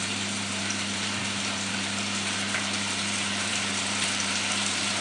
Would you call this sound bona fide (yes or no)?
no